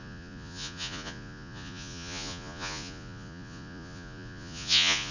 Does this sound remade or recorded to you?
remade